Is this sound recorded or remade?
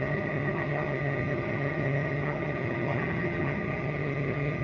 remade